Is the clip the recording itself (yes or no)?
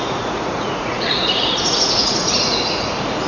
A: no